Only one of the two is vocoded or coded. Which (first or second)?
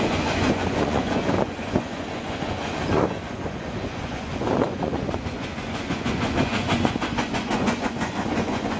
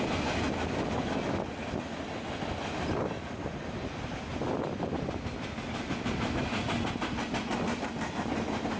first